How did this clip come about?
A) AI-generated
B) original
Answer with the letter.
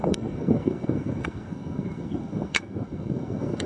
A